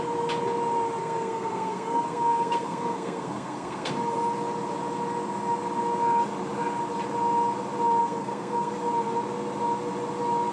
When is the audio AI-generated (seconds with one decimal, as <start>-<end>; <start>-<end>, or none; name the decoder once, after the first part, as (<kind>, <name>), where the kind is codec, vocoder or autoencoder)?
1.0-3.9 (codec, SNAC); 8.0-8.7